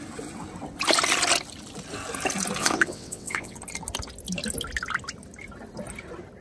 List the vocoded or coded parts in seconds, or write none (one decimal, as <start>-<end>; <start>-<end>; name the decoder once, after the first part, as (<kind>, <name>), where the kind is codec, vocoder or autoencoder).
2.6-3.6 (vocoder, WaveNeXt)